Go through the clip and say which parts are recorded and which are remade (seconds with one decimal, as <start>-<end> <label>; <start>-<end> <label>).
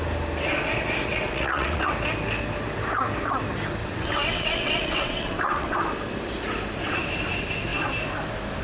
0.0-1.1 recorded; 1.1-1.9 remade; 1.9-3.8 recorded; 3.8-5.8 remade; 5.8-8.6 recorded